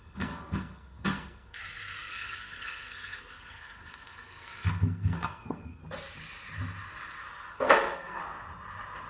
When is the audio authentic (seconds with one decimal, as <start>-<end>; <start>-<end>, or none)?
1.6-2.1; 5.8-7.5; 8.2-9.1